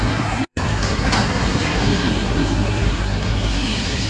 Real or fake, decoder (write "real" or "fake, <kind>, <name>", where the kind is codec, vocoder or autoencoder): fake, codec, SNAC